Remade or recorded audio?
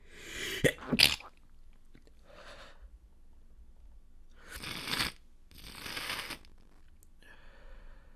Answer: recorded